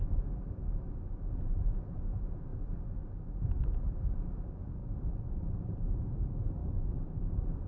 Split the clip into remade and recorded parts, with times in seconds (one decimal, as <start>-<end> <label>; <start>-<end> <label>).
0.0-2.5 remade; 2.5-3.6 recorded; 3.6-4.8 remade; 4.8-5.4 recorded; 5.4-7.7 remade